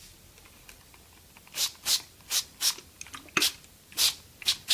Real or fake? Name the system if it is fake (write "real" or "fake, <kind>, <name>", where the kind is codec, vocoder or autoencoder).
real